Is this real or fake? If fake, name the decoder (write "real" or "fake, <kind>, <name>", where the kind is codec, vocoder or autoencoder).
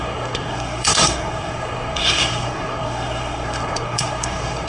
fake, codec, SNAC